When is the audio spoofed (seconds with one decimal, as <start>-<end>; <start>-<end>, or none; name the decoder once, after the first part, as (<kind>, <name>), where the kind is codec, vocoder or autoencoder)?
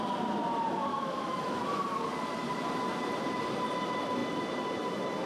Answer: 0.9-1.6 (autoencoder, DAC-VAE)